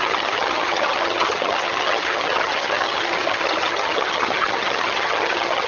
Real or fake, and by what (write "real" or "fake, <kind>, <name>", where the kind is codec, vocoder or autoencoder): fake, vocoder, HiFi-GAN